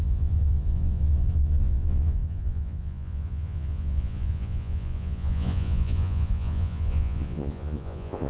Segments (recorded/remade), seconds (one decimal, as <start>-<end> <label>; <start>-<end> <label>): 0.0-8.3 remade